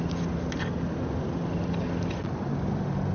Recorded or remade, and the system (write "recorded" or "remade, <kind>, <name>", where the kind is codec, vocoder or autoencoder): recorded